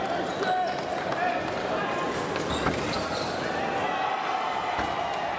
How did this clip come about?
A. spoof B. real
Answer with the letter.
B